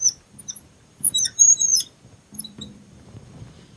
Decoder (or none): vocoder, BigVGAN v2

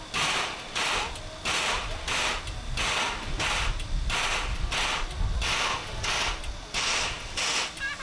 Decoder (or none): none